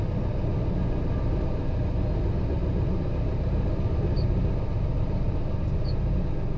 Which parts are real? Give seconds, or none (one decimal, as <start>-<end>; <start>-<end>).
0.0-6.6